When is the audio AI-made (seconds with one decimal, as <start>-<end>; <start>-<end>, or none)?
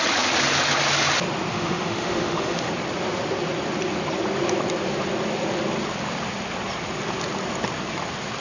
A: 1.5-2.7